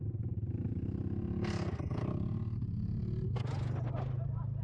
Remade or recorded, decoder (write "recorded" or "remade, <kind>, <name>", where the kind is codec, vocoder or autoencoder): recorded